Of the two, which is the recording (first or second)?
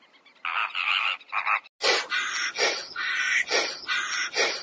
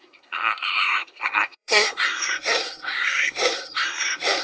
first